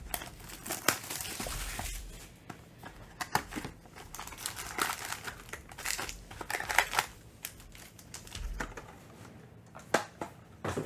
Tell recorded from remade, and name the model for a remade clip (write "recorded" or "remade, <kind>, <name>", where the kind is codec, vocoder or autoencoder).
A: remade, vocoder, BigVGAN v2